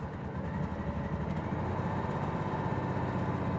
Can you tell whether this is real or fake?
real